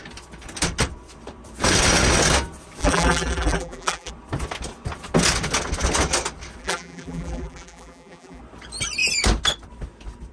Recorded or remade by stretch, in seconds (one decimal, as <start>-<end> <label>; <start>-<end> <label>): 0.0-2.8 recorded; 2.8-4.1 remade; 4.1-6.6 recorded; 6.6-8.4 remade; 8.4-10.3 recorded